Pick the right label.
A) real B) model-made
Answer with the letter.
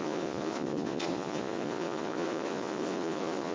B